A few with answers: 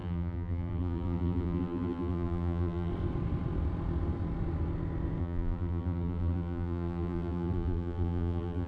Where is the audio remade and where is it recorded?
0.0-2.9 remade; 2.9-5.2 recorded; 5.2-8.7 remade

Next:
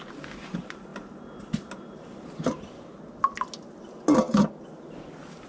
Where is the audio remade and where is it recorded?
0.0-5.5 recorded

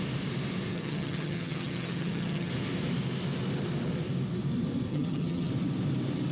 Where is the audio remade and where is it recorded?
0.0-0.7 recorded; 0.7-2.5 remade; 2.5-4.9 recorded; 4.9-5.5 remade; 5.5-6.3 recorded

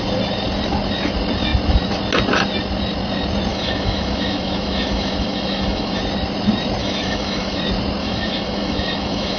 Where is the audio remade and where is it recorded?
0.0-3.5 recorded; 3.5-6.0 remade; 6.0-6.8 recorded; 6.8-7.6 remade; 7.6-8.0 recorded; 8.0-9.4 remade

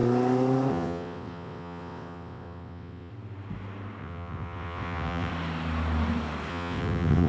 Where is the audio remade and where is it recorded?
0.0-0.7 recorded; 0.7-3.1 remade; 3.1-4.0 recorded; 4.0-5.3 remade; 5.3-6.5 recorded; 6.5-7.3 remade

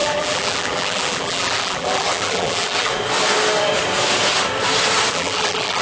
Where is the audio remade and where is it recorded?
0.0-2.9 remade; 2.9-5.1 recorded; 5.1-5.8 remade

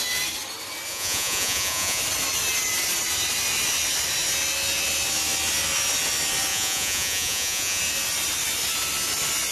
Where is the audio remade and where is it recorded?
0.0-0.9 recorded; 0.9-2.0 remade; 2.0-6.5 recorded; 6.5-7.8 remade; 7.8-9.5 recorded

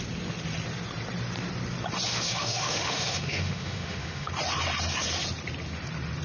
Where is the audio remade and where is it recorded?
0.0-2.1 recorded; 2.1-4.3 remade; 4.3-6.2 recorded